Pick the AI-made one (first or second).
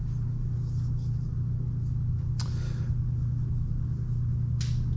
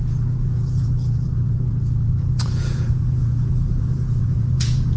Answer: second